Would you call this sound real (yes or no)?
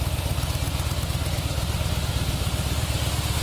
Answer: yes